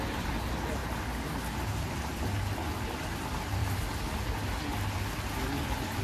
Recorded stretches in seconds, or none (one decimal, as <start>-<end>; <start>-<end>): 0.0-6.0

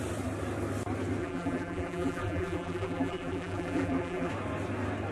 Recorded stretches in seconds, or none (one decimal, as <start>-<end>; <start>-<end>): 0.0-1.2; 4.3-5.1

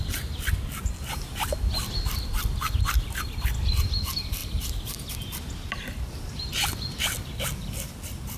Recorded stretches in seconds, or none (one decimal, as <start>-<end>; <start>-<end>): 0.0-8.4

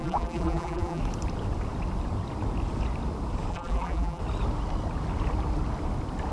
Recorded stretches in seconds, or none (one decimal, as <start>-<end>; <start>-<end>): 1.0-3.5; 4.2-6.3

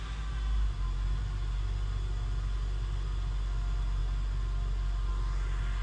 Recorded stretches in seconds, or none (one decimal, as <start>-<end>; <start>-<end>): 0.0-5.8

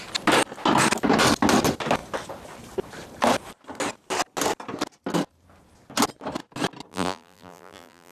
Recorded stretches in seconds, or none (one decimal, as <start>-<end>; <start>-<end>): 0.0-6.9